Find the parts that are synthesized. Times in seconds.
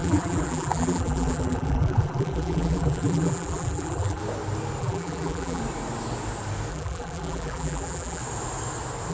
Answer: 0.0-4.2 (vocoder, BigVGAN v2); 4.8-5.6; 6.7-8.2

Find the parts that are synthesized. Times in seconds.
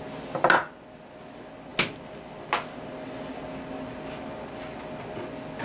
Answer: none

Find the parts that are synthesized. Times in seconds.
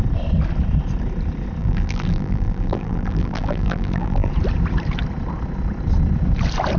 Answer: 1.6-4.3 (vocoder, BigVGAN v2)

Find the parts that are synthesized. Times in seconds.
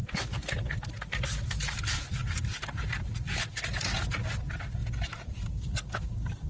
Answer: 2.2-3.4 (vocoder, BigVGAN v2)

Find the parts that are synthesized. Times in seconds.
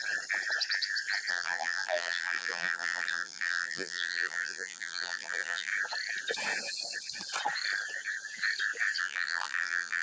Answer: 1.3-5.7 (vocoder, BigVGAN v2); 9.0-10.0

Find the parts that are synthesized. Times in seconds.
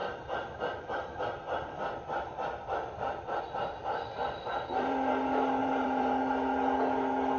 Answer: 0.0-3.4 (vocoder, BigVGAN v2); 3.8-5.1; 5.6-6.2